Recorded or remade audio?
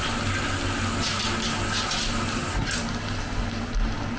recorded